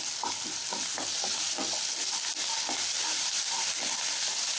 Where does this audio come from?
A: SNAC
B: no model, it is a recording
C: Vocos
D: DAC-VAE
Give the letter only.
B